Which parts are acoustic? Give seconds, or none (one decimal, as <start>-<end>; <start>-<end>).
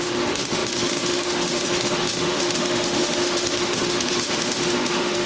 none